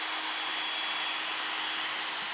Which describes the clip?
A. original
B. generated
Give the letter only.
A